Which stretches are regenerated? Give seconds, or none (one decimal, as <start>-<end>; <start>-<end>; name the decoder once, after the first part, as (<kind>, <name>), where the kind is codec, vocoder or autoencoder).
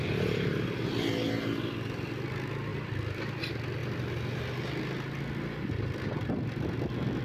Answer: 2.7-3.4 (vocoder, BigVGAN v2)